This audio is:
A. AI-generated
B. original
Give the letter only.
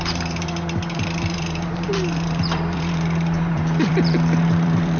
A